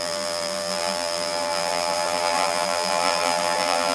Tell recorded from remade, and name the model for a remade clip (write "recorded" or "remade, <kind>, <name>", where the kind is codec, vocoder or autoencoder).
remade, vocoder, BigVGAN v2